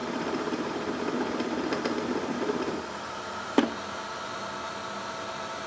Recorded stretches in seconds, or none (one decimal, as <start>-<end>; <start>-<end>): 0.0-5.7